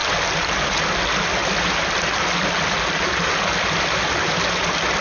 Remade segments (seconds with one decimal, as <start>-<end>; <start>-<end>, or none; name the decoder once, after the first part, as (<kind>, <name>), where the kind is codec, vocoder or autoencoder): none